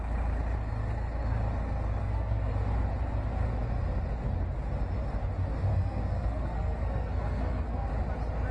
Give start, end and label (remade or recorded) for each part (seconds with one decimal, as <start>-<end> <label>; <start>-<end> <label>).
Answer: 0.0-2.0 recorded; 2.0-2.5 remade; 2.5-5.7 recorded; 5.7-7.9 remade; 7.9-8.5 recorded